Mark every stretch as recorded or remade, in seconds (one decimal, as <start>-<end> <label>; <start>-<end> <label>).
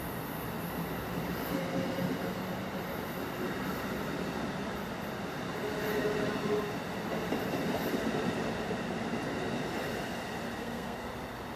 0.0-10.6 recorded; 10.6-11.1 remade; 11.1-11.6 recorded